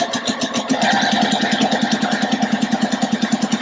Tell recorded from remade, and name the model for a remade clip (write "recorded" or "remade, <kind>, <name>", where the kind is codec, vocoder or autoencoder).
recorded